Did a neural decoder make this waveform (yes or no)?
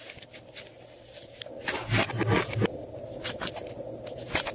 no